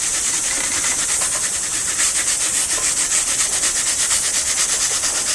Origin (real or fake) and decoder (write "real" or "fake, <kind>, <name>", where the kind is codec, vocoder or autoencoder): real